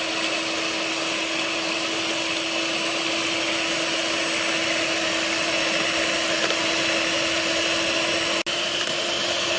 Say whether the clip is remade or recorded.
recorded